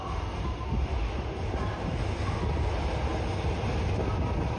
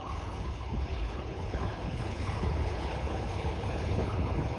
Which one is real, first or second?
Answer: first